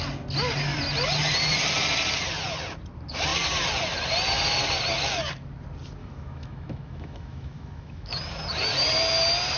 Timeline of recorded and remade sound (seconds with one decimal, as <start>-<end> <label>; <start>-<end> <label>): 0.0-6.0 recorded; 6.0-8.2 remade; 8.2-9.6 recorded